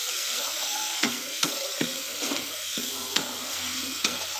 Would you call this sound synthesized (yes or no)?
yes